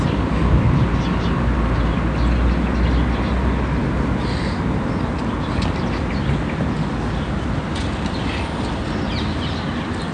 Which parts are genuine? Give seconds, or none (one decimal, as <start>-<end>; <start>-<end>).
0.0-10.1